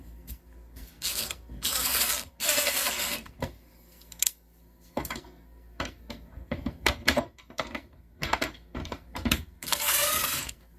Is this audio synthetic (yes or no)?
yes